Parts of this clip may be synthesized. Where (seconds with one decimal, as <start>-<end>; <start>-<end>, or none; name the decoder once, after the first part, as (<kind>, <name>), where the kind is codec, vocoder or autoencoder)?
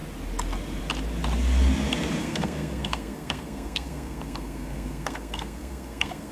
2.2-6.3 (codec, SNAC)